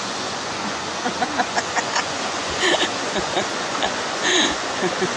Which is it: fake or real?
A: fake